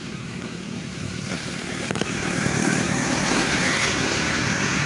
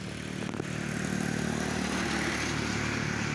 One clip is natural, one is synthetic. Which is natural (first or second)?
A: second